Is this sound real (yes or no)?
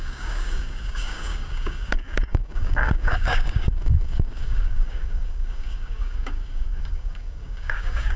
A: no